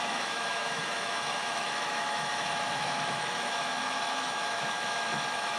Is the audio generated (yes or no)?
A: yes